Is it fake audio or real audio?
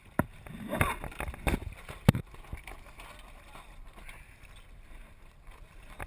real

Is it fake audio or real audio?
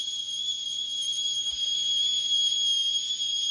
real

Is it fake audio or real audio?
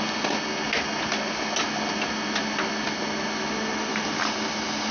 real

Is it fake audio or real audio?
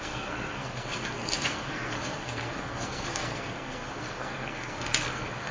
fake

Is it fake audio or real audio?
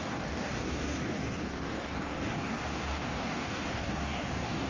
fake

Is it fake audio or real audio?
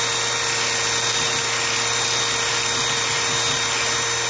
real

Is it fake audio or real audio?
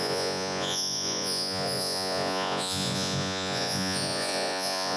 fake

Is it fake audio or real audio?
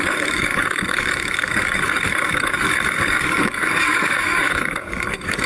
fake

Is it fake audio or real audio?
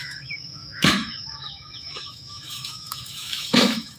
fake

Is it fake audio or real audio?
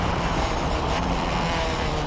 fake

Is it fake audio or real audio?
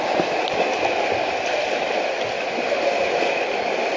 real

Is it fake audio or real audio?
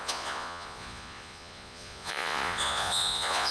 fake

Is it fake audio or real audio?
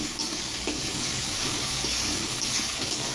fake